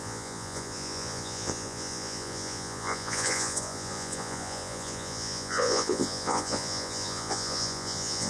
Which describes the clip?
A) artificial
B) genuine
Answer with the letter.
A